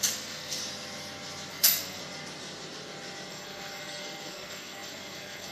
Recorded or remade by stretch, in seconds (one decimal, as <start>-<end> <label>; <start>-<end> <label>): 0.0-0.6 remade; 0.6-1.5 recorded; 1.5-2.0 remade; 2.0-3.3 recorded; 3.3-5.5 remade